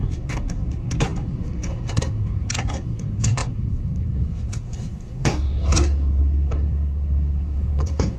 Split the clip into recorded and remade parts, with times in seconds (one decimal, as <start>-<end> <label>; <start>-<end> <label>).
0.0-8.2 remade